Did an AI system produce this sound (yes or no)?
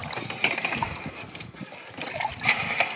no